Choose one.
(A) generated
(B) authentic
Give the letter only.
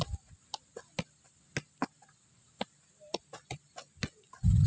B